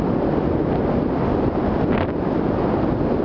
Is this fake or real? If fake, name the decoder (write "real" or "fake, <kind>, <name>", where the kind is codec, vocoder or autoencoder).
real